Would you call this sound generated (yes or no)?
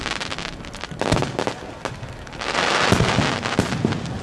no